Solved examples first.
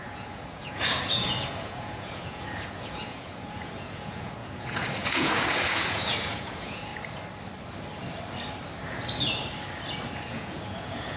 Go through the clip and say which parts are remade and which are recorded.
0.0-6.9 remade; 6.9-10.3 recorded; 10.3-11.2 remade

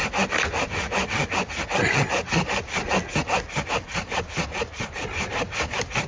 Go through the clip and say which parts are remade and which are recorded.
0.0-6.1 recorded

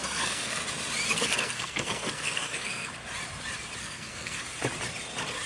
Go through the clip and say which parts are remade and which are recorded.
0.0-0.6 remade; 0.6-1.1 recorded; 1.1-2.9 remade; 2.9-3.8 recorded; 3.8-4.4 remade; 4.4-5.5 recorded